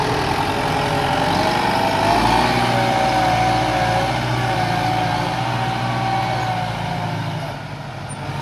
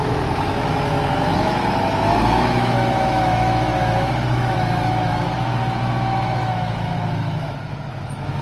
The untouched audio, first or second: first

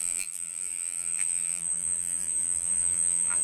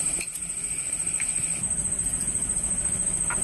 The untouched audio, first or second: second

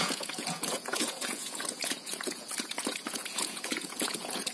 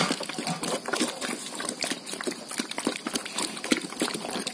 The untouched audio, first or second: second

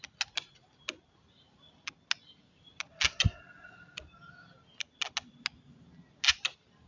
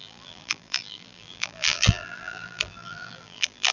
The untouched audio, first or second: first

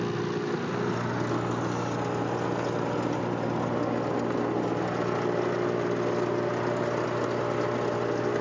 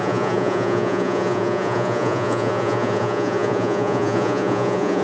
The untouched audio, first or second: first